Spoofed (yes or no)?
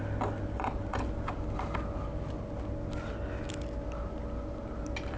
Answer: no